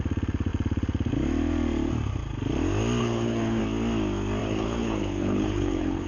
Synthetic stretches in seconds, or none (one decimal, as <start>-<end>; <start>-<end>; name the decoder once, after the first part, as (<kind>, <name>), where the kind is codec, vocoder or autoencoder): 3.0-3.6 (codec, HILCodec); 4.4-6.1